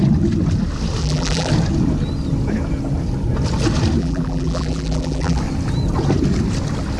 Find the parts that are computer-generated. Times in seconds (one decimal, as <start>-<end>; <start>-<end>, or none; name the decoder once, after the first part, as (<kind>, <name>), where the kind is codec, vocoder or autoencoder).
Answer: 1.0-1.5 (vocoder, BigVGAN v2); 4.0-5.4